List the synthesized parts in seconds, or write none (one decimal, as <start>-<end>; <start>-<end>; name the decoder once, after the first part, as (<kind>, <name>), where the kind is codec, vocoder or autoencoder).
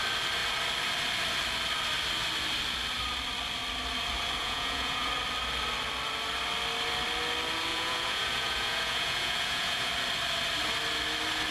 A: 4.4-5.1 (vocoder, Vocos); 7.7-9.9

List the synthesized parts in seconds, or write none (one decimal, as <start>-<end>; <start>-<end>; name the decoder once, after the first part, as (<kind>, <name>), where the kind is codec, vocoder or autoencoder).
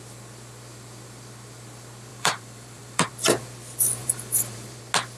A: 2.1-3.1 (vocoder, BigVGAN v2); 4.0-4.8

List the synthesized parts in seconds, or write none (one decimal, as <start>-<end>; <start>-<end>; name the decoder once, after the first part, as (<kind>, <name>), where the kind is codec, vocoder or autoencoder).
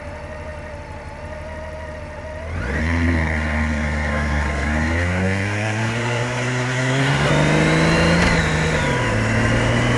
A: 2.8-7.3 (codec, SNAC)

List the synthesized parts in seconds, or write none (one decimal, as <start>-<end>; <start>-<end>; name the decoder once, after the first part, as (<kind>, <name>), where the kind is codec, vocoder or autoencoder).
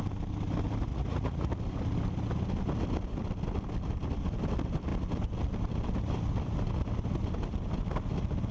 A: 0.9-1.5 (vocoder, Vocos)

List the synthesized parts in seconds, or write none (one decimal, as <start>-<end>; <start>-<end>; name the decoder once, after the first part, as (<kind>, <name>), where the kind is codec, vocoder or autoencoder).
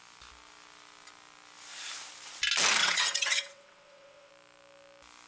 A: 2.8-4.3 (vocoder, WaveNeXt)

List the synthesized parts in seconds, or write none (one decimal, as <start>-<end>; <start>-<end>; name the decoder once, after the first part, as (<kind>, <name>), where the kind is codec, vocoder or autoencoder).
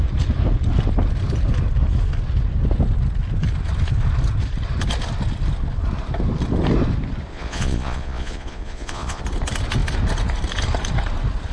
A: 7.3-9.2 (vocoder, Vocos)